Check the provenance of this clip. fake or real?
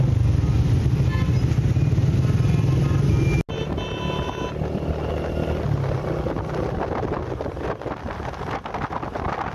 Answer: real